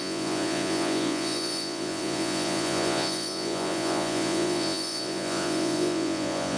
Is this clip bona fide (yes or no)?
no